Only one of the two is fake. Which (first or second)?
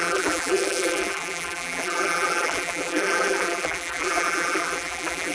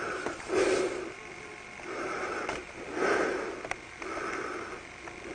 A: first